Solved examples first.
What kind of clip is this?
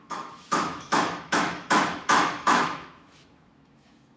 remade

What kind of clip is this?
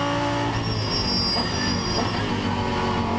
recorded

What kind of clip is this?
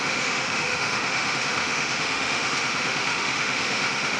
remade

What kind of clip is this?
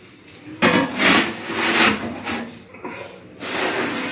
recorded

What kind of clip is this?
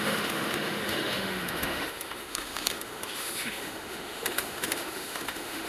remade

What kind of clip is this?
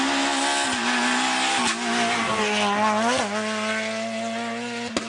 recorded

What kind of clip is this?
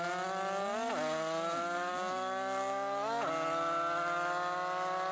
recorded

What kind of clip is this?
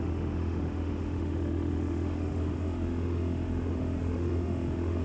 remade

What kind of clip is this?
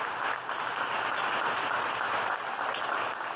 recorded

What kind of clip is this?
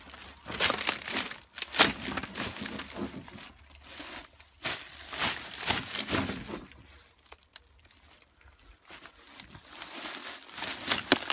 recorded